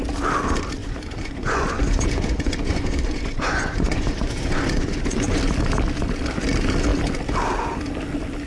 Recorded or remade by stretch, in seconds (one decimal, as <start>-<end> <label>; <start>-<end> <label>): 0.0-0.8 recorded; 0.8-5.4 remade; 5.4-8.5 recorded